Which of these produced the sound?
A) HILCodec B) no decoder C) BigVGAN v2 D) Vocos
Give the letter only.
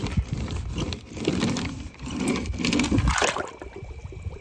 C